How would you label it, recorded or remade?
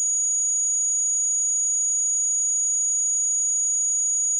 recorded